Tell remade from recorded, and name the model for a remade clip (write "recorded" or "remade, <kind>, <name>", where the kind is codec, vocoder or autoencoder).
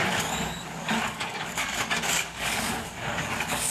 remade, codec, DAC